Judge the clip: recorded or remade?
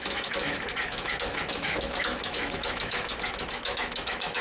remade